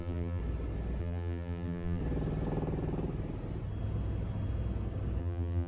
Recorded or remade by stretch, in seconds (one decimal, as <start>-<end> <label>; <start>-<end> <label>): 0.0-0.4 remade; 0.4-1.0 recorded; 1.0-2.0 remade; 2.0-5.2 recorded; 5.2-5.7 remade